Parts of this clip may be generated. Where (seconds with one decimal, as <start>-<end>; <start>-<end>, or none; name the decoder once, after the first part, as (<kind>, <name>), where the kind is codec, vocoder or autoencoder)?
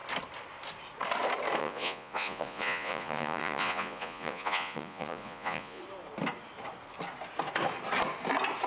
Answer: 1.6-5.8 (vocoder, Vocos)